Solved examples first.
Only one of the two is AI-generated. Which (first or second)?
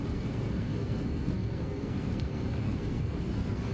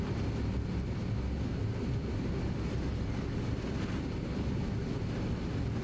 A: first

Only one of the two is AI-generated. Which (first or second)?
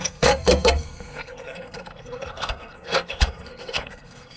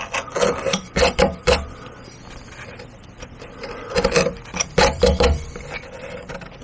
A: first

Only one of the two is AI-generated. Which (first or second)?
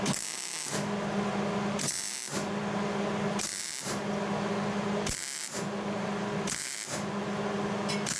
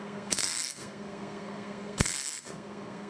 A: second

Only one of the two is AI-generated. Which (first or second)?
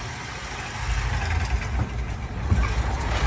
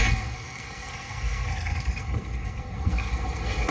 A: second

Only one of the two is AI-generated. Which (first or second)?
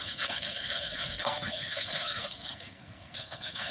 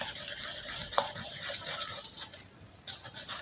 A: first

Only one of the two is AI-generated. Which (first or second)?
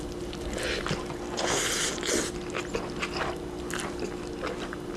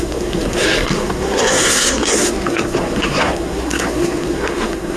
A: second